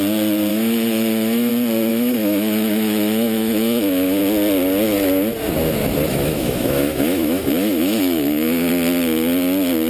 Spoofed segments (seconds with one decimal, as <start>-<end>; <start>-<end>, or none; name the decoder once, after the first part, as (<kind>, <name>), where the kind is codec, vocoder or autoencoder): 0.5-1.5 (autoencoder, DAC-VAE); 1.9-4.2; 6.1-8.7